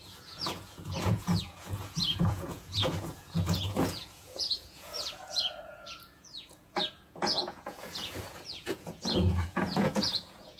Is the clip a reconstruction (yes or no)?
yes